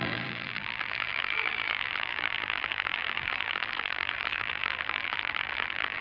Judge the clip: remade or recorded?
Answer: remade